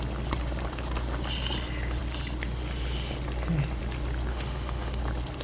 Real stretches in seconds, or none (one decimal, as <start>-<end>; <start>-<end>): 0.0-4.3; 5.0-5.4